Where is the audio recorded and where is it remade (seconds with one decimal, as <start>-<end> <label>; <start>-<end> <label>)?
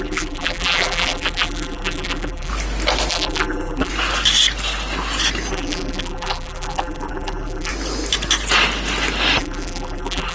0.0-2.5 remade; 2.5-3.1 recorded; 3.1-3.9 remade; 3.9-5.5 recorded; 5.5-7.7 remade; 7.7-9.4 recorded; 9.4-10.3 remade